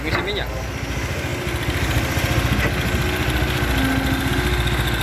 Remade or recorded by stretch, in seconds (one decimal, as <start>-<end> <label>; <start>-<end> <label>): 0.0-5.0 recorded